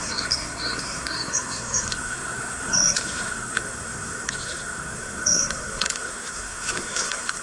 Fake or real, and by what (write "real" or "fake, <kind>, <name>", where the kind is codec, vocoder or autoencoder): fake, codec, SNAC